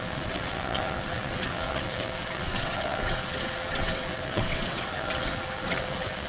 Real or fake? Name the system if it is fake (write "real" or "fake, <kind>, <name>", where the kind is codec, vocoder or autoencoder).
fake, vocoder, WaveNeXt